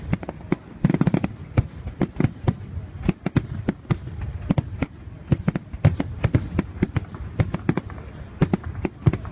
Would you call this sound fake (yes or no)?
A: no